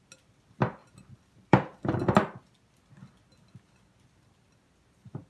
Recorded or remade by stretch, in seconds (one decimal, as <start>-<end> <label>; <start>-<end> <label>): 0.0-0.8 recorded; 0.8-2.0 remade; 2.0-5.3 recorded